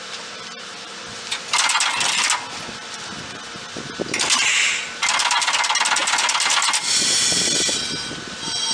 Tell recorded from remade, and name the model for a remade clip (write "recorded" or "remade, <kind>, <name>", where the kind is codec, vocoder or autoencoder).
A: recorded